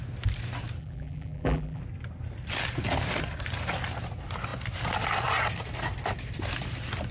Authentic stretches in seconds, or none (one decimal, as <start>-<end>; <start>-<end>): 0.0-0.8; 1.8-7.1